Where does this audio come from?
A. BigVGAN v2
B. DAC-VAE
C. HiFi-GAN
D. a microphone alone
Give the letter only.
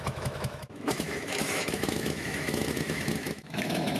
B